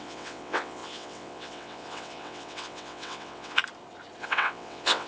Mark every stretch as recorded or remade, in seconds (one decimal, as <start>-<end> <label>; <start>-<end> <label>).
0.0-3.6 remade; 3.6-4.2 recorded; 4.2-5.1 remade